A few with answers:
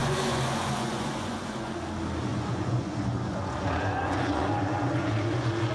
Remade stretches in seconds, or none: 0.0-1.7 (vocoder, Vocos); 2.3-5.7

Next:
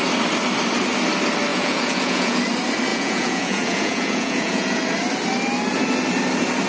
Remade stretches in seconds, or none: 1.5-2.4 (vocoder, Vocos); 2.9-4.8

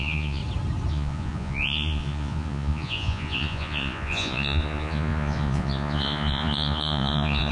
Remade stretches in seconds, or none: 0.0-0.4 (vocoder, Vocos); 0.9-7.5

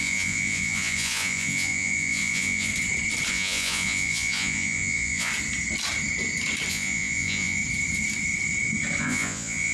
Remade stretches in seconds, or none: 0.0-2.7 (vocoder, Vocos); 3.3-5.3; 6.7-7.6; 9.0-9.7

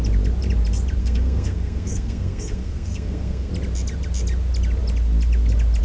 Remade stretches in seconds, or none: 1.0-3.5 (codec, SNAC)

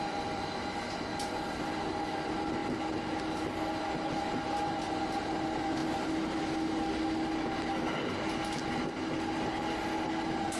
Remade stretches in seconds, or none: none

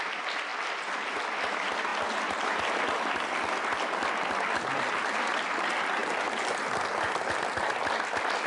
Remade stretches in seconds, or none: none